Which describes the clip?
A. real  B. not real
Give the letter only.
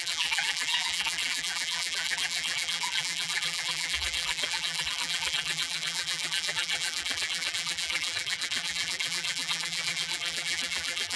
B